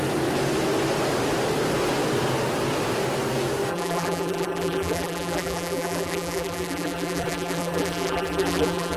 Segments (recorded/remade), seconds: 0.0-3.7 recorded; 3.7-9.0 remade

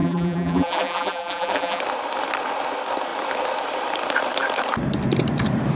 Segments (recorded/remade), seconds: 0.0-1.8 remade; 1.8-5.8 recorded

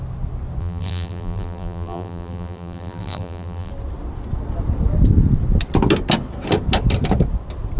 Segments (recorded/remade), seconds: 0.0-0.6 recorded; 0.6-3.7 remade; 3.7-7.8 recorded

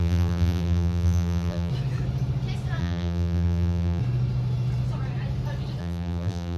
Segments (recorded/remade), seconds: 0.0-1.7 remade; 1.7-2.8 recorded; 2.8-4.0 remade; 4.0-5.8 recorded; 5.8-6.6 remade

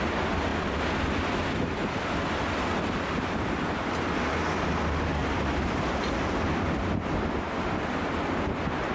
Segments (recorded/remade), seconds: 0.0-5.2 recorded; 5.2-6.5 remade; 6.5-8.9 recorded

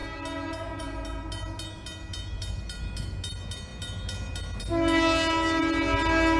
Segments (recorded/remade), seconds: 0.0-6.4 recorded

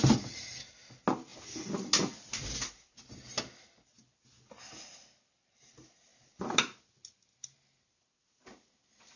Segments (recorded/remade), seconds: 0.0-9.2 recorded